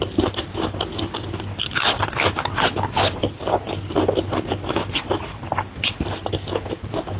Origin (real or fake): real